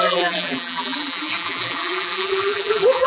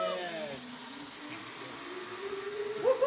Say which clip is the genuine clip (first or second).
second